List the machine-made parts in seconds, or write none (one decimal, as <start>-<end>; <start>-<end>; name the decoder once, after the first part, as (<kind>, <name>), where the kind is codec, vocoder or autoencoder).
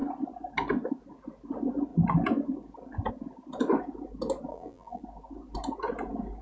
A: 4.5-5.0 (vocoder, BigVGAN v2)